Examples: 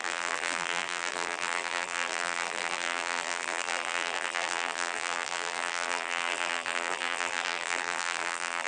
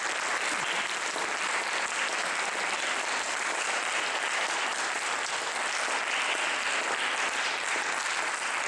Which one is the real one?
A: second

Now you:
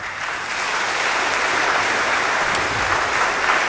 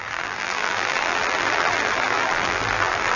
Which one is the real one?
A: first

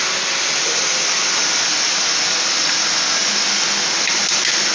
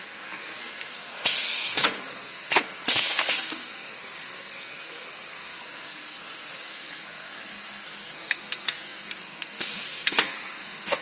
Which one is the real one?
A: first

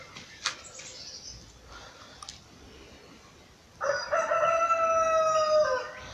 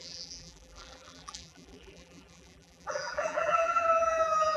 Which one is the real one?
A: first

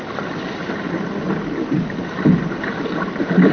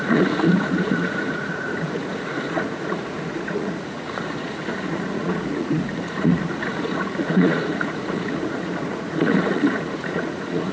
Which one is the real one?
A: first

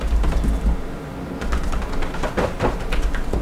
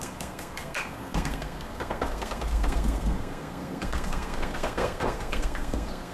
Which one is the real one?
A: first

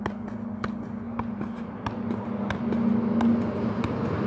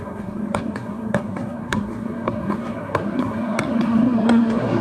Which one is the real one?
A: first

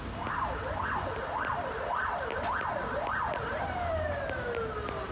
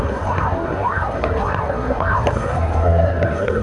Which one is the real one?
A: first